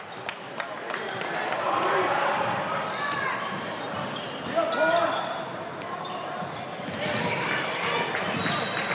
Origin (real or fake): real